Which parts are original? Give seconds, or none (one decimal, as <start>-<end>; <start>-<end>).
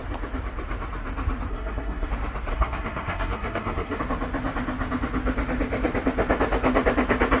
0.0-1.5; 2.1-2.5; 4.0-7.4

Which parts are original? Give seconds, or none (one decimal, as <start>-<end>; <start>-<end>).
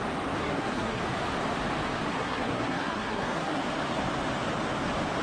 0.0-0.4; 1.0-2.1; 3.6-5.2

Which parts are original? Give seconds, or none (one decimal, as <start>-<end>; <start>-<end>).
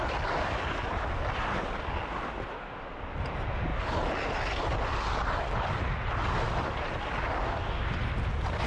0.0-8.7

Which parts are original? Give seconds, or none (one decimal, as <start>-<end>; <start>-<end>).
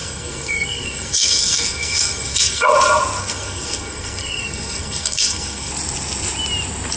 2.7-3.2; 5.7-7.0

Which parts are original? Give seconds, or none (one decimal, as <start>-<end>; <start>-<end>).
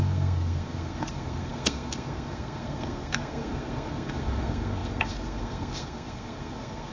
none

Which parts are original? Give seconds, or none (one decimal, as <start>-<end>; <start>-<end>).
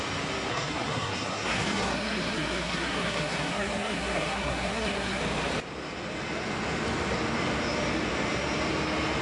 0.0-0.5; 5.2-9.2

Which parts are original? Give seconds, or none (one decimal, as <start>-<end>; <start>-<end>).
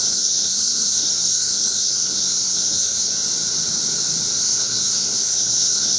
3.1-4.4